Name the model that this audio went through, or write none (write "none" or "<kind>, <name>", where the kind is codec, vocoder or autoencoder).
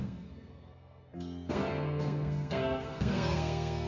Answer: codec, SNAC